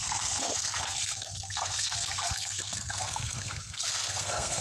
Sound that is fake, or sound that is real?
fake